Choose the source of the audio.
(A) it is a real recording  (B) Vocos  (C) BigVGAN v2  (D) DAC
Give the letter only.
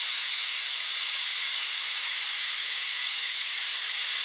D